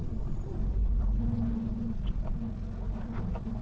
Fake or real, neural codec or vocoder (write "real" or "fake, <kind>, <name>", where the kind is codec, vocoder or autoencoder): real